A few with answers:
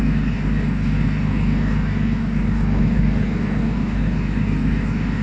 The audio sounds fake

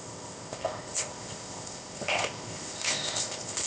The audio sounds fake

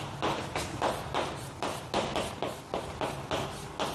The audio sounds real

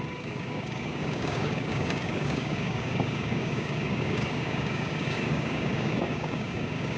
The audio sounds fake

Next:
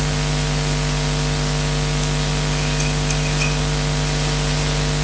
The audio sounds real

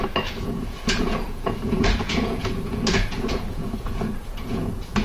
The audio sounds fake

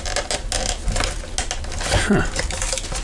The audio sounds real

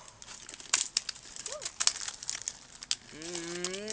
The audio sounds real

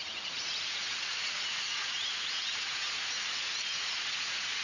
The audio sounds fake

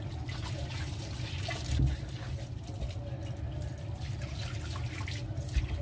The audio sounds real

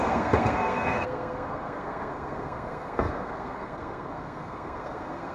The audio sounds fake